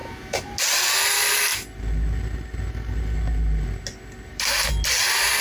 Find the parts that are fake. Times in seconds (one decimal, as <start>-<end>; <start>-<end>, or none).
0.0-0.6